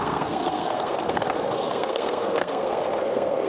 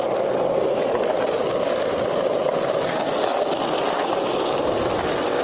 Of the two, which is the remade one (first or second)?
first